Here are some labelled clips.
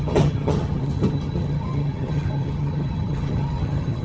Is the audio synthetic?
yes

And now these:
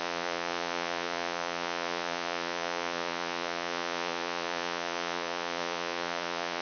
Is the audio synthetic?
yes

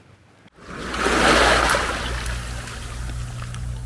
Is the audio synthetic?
no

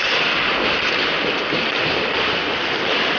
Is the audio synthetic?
no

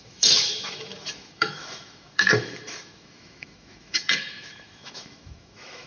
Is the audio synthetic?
yes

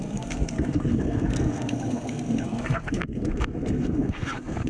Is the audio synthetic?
yes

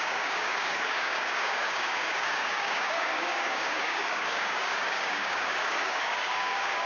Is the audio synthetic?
yes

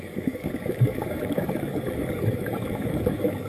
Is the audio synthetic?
yes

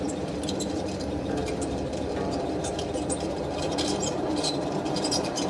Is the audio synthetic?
yes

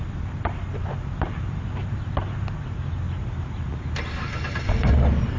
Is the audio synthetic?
no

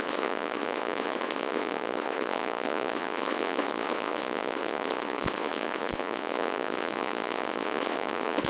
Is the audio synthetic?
yes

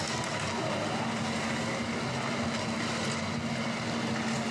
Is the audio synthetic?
no